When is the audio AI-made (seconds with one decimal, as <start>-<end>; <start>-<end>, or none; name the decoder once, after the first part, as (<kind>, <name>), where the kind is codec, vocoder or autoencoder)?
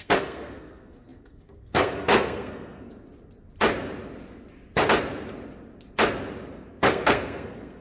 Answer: 0.0-2.9 (codec, SNAC); 6.5-7.8